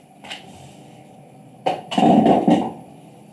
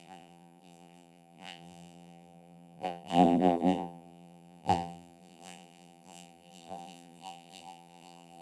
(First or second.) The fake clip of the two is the second